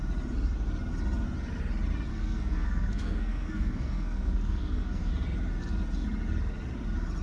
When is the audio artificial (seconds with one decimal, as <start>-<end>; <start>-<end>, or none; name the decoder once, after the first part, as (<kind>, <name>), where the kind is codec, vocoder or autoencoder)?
2.1-5.1 (codec, SNAC)